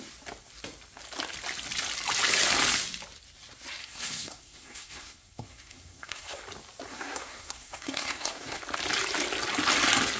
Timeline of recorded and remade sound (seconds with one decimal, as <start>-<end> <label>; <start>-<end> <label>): 0.0-3.8 recorded; 3.8-6.4 remade; 6.4-6.9 recorded; 6.9-8.6 remade; 8.6-10.2 recorded